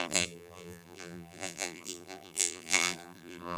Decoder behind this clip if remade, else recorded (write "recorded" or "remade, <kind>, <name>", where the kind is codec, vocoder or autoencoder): remade, vocoder, BigVGAN v2